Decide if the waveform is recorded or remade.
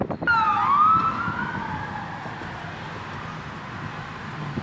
recorded